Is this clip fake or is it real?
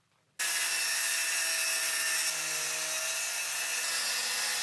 real